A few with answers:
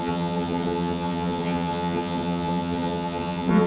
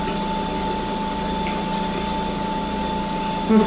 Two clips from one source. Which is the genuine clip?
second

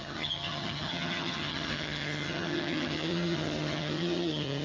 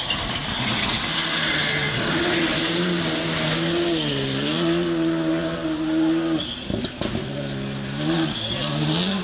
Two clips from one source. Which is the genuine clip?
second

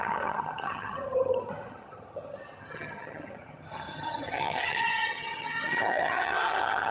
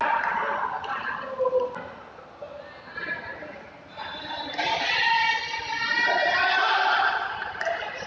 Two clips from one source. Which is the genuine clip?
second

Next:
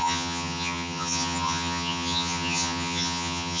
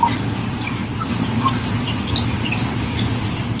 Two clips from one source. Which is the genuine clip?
second